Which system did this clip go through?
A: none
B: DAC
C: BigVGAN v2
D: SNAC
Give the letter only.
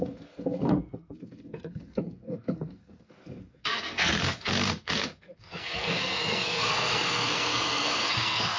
D